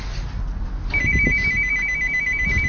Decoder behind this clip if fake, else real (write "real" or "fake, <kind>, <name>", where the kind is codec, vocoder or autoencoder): real